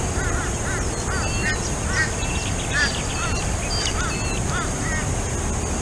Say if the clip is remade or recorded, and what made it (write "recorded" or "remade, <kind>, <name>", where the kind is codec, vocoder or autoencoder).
recorded